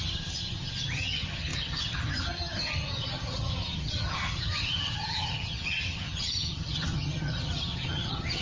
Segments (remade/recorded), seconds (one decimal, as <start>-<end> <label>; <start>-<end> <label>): 0.0-8.4 remade